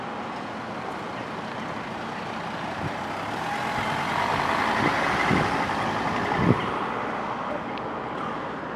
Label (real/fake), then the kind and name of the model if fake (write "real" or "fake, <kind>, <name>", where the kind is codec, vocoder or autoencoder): real